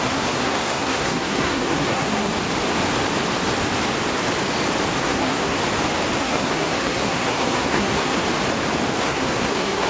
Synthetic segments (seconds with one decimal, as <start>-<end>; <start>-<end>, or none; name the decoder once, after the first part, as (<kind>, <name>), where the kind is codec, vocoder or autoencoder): 0.0-2.3 (codec, SNAC); 5.0-5.6; 6.2-8.2; 9.0-9.9

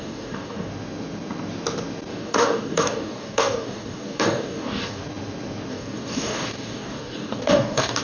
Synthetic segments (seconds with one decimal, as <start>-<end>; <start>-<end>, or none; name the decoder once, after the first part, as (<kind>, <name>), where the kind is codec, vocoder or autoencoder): 0.0-0.7 (codec, DAC); 2.1-5.0; 5.7-8.0

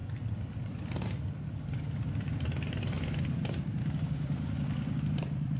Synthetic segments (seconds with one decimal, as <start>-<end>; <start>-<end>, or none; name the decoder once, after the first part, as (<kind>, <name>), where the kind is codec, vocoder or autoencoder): 3.8-5.0 (codec, DAC)

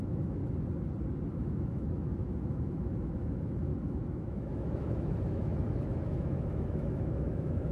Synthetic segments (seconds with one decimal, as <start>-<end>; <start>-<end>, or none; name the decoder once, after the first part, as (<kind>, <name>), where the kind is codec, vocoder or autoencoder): 0.0-0.4 (autoencoder, DAC-VAE); 1.3-7.7

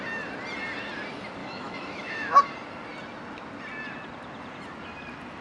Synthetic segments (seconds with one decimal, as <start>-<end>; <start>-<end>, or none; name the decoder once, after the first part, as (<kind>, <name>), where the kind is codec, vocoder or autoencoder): 1.4-2.4 (autoencoder, DAC-VAE)

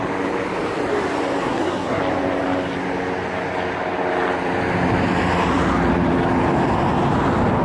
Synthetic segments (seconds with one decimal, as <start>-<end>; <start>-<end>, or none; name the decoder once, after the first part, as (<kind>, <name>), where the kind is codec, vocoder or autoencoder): 1.4-2.0 (codec, SNAC)